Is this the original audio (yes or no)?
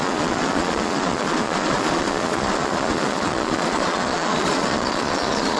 no